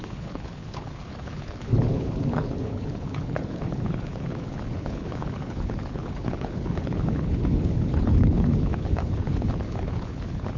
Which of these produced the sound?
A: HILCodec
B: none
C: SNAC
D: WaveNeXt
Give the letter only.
A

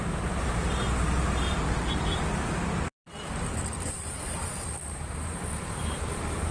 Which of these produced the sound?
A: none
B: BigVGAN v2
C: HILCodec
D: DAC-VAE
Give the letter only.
B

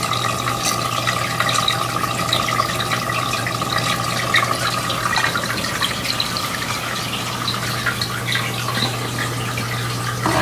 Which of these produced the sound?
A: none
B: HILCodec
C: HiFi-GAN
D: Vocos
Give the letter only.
A